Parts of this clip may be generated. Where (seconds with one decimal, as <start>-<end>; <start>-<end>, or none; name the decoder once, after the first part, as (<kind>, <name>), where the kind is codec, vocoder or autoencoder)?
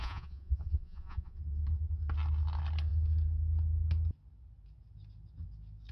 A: 0.0-1.4 (vocoder, Vocos)